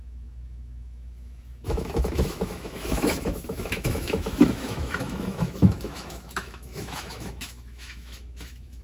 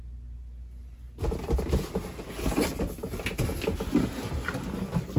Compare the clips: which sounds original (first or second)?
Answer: second